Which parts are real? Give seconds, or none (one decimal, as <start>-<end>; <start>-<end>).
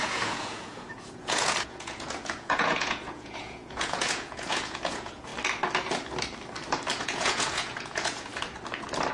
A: 5.3-7.0; 8.3-9.1